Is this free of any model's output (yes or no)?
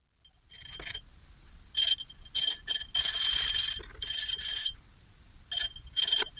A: yes